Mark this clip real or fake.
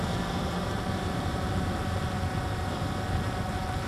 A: fake